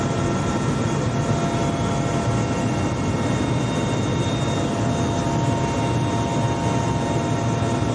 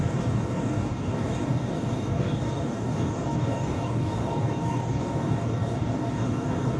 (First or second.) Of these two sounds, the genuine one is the first